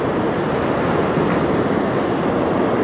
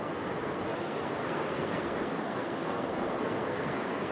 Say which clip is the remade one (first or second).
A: second